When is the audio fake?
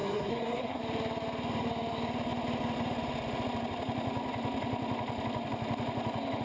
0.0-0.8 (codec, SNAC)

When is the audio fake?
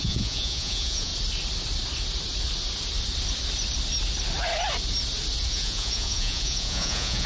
0.0-1.1 (vocoder, Vocos); 5.5-7.3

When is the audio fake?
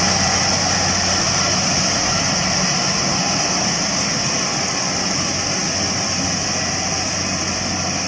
none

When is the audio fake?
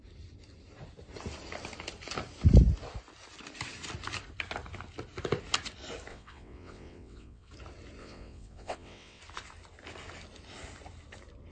6.1-7.5 (vocoder, WaveNeXt); 8.0-9.2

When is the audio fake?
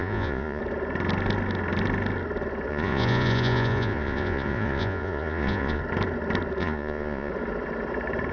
0.0-0.6 (vocoder, Vocos); 2.7-5.8; 6.6-7.3